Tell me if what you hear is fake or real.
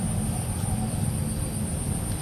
real